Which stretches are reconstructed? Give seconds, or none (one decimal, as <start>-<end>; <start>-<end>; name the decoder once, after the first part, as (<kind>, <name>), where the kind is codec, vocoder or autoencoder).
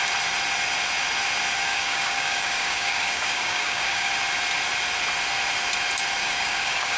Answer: 1.7-4.1 (codec, DAC); 6.2-7.0